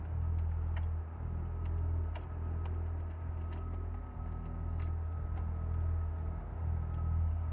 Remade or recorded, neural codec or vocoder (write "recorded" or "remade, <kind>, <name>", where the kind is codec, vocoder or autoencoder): recorded